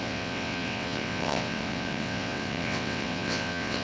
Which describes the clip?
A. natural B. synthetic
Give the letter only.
B